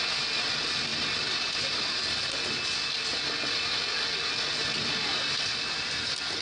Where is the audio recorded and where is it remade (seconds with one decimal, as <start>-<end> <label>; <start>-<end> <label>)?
0.0-6.4 recorded

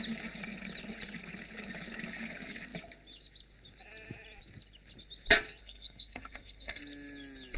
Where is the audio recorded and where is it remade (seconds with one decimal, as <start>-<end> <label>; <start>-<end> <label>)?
0.0-5.6 recorded; 5.6-6.8 remade; 6.8-7.6 recorded

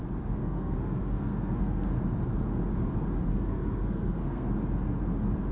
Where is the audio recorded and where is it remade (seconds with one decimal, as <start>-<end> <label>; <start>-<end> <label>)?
0.0-0.4 recorded; 0.4-2.0 remade; 2.0-3.3 recorded; 3.3-4.5 remade; 4.5-5.5 recorded

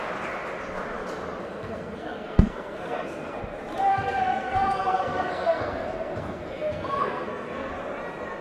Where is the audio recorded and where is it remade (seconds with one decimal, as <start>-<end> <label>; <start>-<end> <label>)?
0.0-1.4 recorded; 1.4-3.4 remade; 3.4-3.9 recorded; 3.9-7.7 remade; 7.7-8.4 recorded

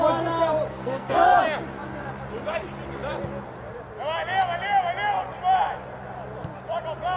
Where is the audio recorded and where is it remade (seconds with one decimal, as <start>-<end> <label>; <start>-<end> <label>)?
0.0-0.7 recorded; 0.7-1.4 remade; 1.4-7.2 recorded

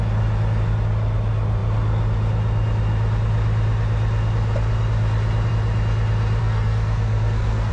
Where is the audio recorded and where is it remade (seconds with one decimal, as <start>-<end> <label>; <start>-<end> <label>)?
0.0-6.4 recorded; 6.4-7.7 remade